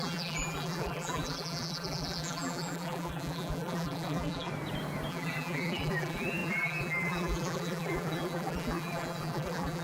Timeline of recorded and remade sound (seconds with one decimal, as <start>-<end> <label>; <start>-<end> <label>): 0.0-4.5 remade; 4.5-5.1 recorded; 5.1-9.8 remade

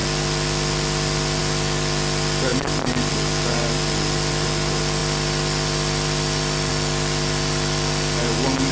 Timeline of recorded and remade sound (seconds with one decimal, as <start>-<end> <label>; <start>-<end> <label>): 0.0-2.5 recorded; 2.5-3.1 remade; 3.1-5.0 recorded; 5.0-6.7 remade; 6.7-8.7 recorded

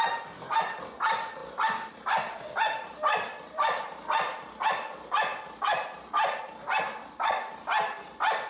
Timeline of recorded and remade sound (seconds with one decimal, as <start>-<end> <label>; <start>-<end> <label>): 0.0-1.4 remade; 1.4-1.9 recorded; 1.9-5.3 remade; 5.3-8.5 recorded

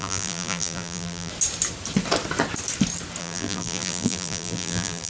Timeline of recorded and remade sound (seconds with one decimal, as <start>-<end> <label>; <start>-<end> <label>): 0.0-1.3 remade; 1.3-3.2 recorded; 3.2-5.1 remade

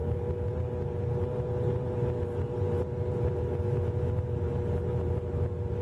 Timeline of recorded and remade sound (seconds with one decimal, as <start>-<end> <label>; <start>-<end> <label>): 0.0-5.8 recorded

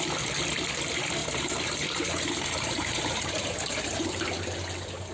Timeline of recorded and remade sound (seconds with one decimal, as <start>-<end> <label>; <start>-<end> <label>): 0.0-1.2 recorded; 1.2-4.2 remade; 4.2-5.1 recorded

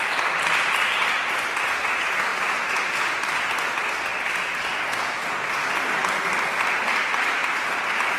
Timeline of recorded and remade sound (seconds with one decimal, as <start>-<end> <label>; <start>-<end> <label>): 0.0-7.4 recorded; 7.4-8.2 remade

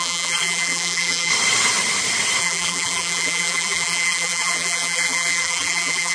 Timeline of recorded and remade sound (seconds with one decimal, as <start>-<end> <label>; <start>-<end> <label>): 0.0-1.3 remade; 1.3-2.4 recorded; 2.4-6.1 remade